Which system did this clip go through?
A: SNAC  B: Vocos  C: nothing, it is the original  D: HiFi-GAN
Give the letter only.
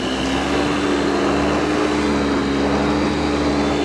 C